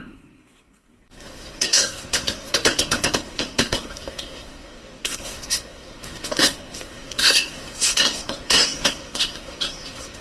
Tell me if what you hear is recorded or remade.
remade